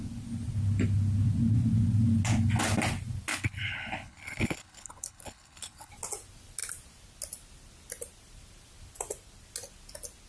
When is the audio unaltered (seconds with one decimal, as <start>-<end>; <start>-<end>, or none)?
0.0-3.3; 5.9-10.3